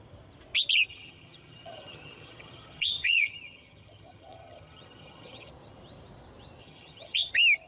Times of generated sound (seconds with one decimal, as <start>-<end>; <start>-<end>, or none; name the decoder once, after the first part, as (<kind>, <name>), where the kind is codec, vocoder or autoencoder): 0.9-5.5 (vocoder, HiFi-GAN); 6.6-7.3